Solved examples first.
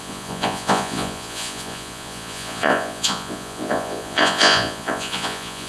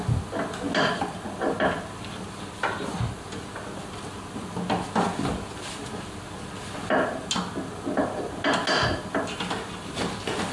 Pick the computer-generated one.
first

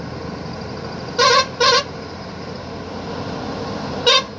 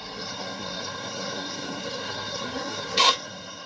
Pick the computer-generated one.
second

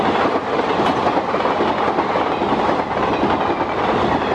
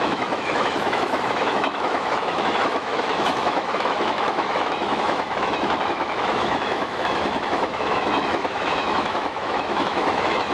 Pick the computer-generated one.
second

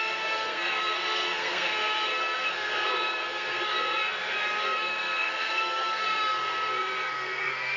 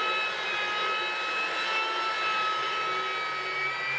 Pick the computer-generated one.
first